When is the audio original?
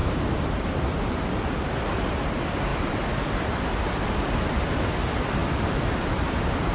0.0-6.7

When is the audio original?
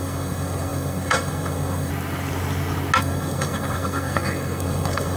1.9-3.0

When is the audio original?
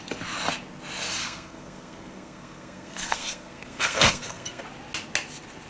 0.0-1.2; 4.6-5.7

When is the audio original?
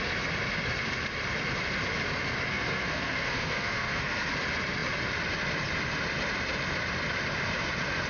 0.0-2.5; 4.3-8.1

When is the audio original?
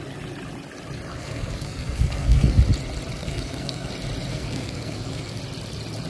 0.0-1.1; 2.6-3.2; 3.9-4.3; 5.4-6.1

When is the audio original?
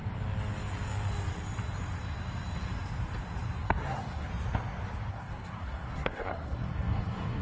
0.0-3.6; 4.3-5.1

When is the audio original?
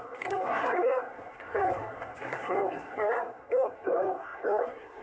none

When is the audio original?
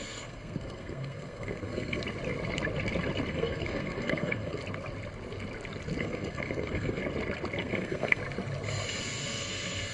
2.0-3.3; 4.6-6.0; 7.0-7.6; 8.2-9.0